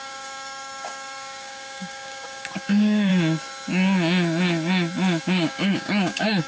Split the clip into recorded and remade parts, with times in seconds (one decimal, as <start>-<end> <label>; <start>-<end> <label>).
0.0-3.1 remade; 3.1-5.2 recorded; 5.2-6.5 remade